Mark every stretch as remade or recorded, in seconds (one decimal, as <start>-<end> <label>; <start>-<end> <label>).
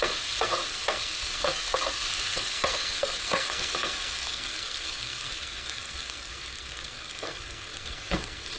0.0-8.6 remade